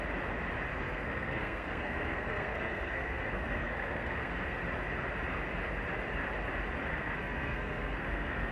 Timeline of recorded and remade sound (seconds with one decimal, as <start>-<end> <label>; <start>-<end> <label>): 0.0-0.7 recorded; 0.7-4.6 remade; 4.6-6.9 recorded; 6.9-8.5 remade